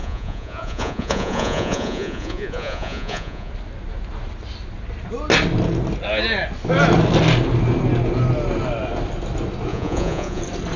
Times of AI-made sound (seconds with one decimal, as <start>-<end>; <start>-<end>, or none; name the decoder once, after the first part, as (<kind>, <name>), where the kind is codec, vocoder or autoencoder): 0.0-3.5 (vocoder, Vocos); 9.7-10.4